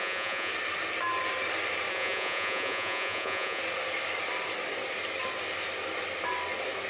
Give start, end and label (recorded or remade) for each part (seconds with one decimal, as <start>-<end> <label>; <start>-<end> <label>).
0.0-0.5 remade; 0.5-1.9 recorded; 1.9-3.6 remade; 3.6-6.9 recorded